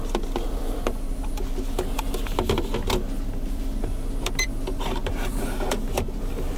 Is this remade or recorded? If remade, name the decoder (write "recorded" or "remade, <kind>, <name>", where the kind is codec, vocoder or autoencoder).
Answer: recorded